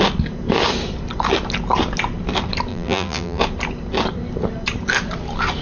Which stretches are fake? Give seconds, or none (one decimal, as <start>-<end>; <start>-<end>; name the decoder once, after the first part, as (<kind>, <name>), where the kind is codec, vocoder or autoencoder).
2.7-3.4 (vocoder, BigVGAN v2)